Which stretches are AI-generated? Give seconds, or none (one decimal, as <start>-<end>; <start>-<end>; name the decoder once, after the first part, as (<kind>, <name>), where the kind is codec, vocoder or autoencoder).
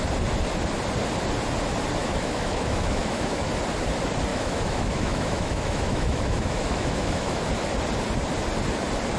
2.0-3.5 (autoencoder, DAC-VAE); 4.3-7.4